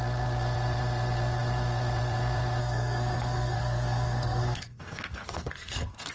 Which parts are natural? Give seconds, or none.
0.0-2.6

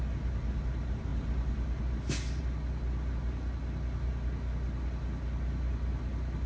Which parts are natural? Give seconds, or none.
0.0-6.5